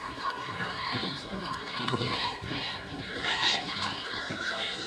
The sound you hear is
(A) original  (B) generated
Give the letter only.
B